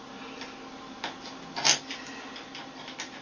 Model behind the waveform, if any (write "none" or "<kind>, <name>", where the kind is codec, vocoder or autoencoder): none